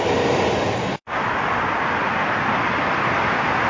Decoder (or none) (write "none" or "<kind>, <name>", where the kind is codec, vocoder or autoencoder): vocoder, BigVGAN v2